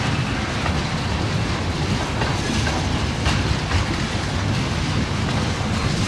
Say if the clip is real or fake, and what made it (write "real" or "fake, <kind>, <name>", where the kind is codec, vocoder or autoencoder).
real